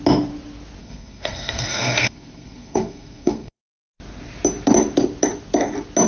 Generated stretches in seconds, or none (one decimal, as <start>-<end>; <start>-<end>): 0.8-3.6